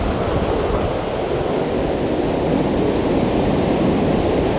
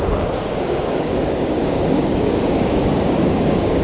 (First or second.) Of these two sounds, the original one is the first